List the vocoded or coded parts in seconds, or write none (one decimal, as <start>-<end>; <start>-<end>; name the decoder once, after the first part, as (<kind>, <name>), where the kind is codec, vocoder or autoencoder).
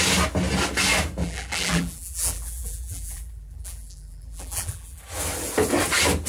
1.2-5.0 (vocoder, BigVGAN v2)